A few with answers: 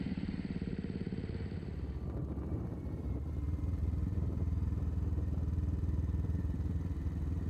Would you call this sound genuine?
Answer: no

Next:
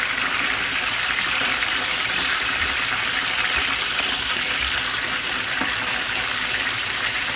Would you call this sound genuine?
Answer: no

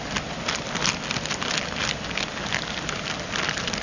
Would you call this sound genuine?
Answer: yes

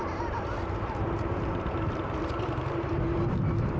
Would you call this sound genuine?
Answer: no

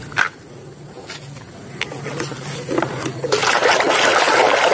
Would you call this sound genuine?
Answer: yes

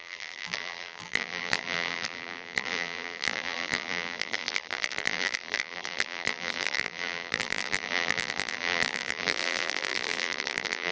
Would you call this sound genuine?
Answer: no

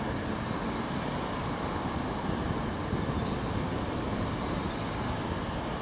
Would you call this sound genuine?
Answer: yes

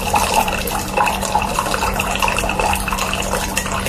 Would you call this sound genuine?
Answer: no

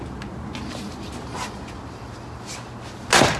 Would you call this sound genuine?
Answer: yes